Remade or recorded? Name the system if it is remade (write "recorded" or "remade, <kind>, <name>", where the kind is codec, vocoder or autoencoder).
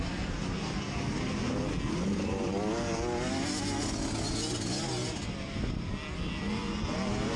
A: recorded